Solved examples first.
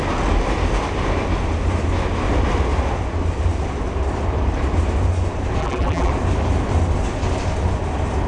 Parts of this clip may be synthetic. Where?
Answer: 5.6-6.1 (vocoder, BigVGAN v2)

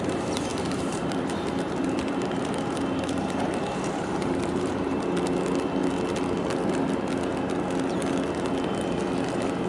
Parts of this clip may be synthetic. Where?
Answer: 0.5-5.0 (vocoder, BigVGAN v2)

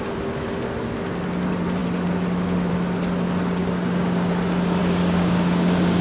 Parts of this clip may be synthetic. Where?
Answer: 3.6-4.3 (codec, DAC); 4.8-6.0

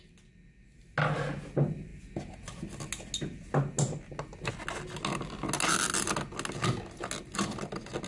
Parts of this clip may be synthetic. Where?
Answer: none

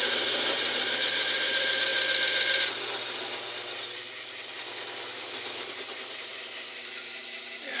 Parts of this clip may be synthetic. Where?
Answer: 0.0-1.9 (vocoder, BigVGAN v2); 5.7-6.3; 6.8-7.8

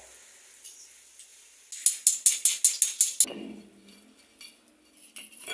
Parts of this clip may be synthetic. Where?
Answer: none

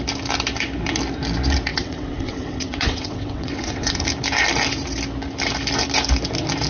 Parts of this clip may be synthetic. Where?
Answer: 1.7-3.9 (vocoder, WaveNeXt)

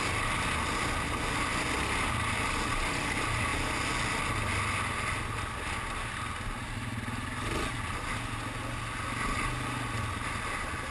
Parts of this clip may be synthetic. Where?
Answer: none